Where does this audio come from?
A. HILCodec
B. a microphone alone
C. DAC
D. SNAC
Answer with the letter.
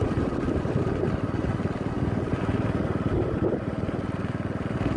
B